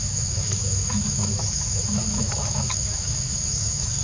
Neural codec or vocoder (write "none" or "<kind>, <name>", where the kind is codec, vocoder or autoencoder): autoencoder, DAC-VAE